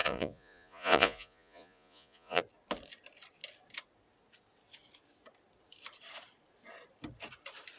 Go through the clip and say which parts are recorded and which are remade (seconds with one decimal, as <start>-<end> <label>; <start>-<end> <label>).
0.0-2.4 remade; 2.4-7.8 recorded